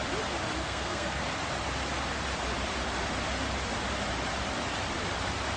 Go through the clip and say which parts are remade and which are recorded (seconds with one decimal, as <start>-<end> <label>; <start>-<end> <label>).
0.0-0.6 recorded; 0.6-1.2 remade; 1.2-5.6 recorded